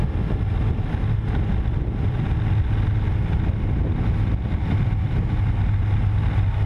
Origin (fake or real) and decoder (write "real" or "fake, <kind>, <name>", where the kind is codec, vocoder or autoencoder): real